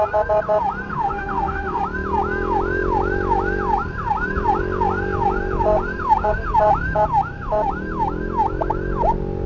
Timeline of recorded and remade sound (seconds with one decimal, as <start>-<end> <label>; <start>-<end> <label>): 0.0-0.9 recorded; 0.9-1.8 remade; 1.8-9.5 recorded